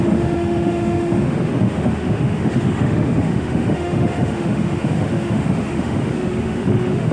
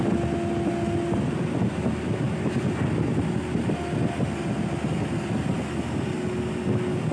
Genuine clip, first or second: second